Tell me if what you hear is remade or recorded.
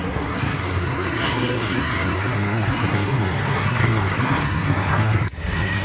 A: remade